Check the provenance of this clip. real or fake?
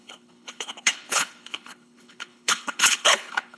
fake